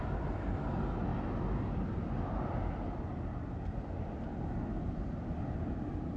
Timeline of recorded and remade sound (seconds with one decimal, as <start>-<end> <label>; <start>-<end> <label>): 0.0-6.2 recorded